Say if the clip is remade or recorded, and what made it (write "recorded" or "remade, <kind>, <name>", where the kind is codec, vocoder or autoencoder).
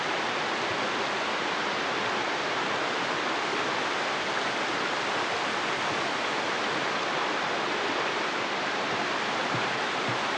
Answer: recorded